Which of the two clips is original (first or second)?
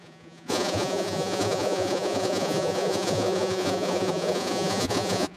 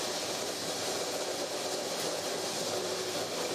second